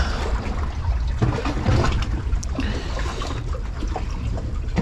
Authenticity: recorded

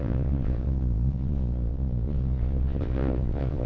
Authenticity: remade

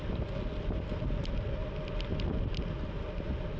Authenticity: recorded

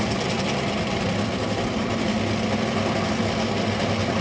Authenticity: recorded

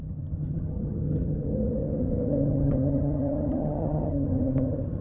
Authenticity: remade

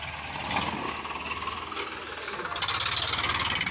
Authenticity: recorded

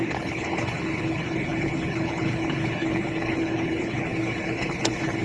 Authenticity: remade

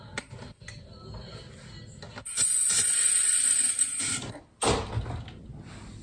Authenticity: recorded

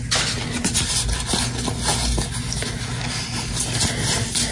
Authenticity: recorded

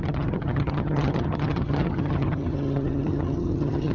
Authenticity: remade